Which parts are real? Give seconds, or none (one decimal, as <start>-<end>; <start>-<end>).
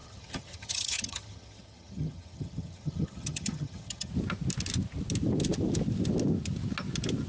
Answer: 4.1-7.3